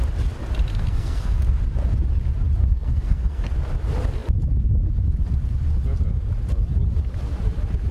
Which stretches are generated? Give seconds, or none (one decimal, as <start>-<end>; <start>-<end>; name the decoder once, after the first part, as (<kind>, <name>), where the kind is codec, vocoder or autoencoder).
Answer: 0.7-1.6 (codec, SNAC); 2.6-3.4